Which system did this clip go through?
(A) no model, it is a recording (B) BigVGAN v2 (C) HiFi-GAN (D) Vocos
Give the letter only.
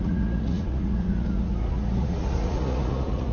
D